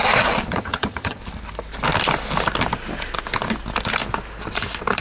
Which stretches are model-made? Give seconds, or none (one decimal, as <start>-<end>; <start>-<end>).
0.5-1.2